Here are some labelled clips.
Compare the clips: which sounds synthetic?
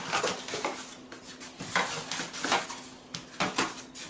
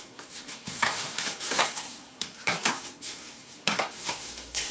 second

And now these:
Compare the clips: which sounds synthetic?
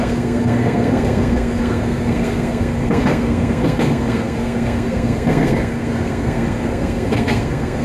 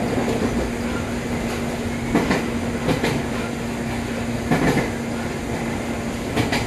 first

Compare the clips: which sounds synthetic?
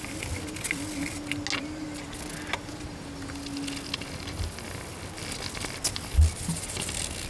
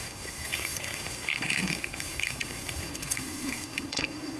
second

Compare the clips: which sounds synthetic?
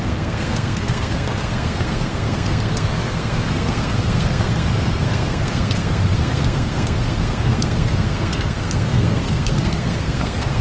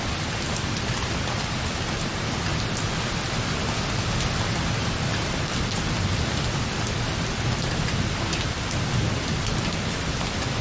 first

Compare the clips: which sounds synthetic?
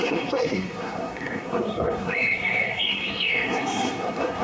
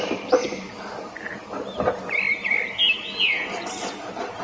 first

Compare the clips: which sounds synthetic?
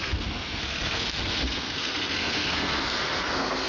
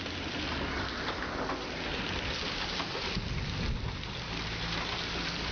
first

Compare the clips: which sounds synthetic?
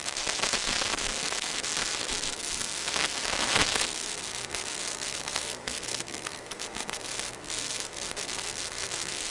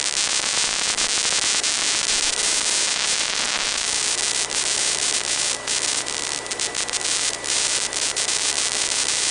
first